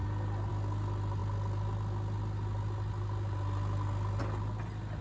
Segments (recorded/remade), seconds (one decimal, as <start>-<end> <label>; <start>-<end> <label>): 0.0-5.0 recorded